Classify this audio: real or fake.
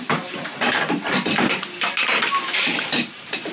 real